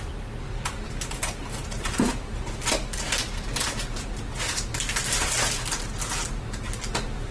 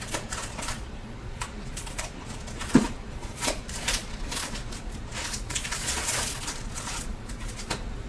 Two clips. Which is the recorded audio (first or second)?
first